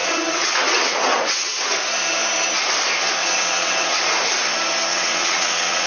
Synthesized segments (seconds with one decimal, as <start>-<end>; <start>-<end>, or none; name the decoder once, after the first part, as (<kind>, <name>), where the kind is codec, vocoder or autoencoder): 0.0-1.6 (vocoder, WaveNeXt); 3.2-4.0; 4.9-5.9